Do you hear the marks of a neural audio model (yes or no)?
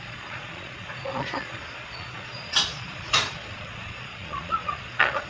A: yes